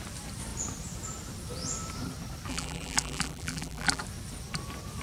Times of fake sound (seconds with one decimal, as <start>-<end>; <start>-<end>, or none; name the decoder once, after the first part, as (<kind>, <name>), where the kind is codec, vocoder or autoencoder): 2.5-4.0 (vocoder, BigVGAN v2)